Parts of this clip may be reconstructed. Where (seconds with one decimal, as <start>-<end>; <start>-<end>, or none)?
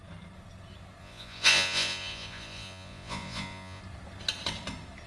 1.0-3.8